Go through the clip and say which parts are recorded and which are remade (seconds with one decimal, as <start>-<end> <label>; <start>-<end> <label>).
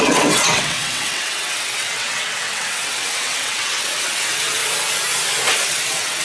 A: 0.0-4.6 remade; 4.6-5.5 recorded; 5.5-6.2 remade